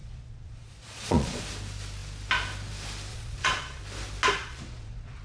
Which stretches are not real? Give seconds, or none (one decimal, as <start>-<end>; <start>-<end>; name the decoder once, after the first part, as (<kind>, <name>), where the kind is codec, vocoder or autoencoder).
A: 0.0-1.4 (vocoder, Vocos); 3.1-3.8; 4.4-5.2